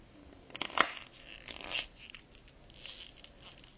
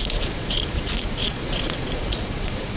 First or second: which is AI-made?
second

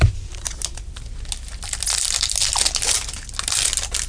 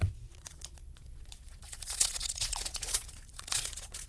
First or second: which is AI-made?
second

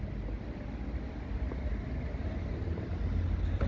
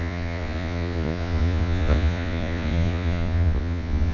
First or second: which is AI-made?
second